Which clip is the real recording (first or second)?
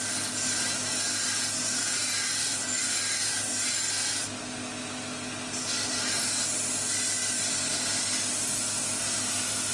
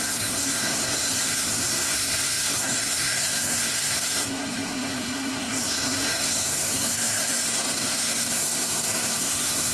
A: first